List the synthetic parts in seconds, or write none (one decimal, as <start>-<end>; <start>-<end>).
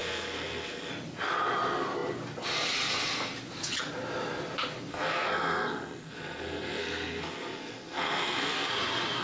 0.0-0.9; 4.9-8.7